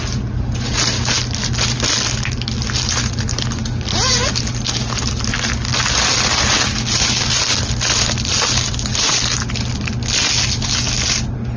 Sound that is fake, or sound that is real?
real